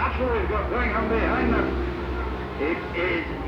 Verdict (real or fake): real